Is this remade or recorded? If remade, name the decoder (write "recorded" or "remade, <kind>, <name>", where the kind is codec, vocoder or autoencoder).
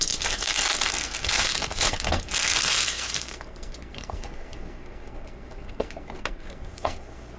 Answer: remade, codec, SNAC